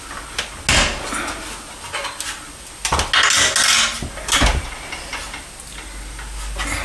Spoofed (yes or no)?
no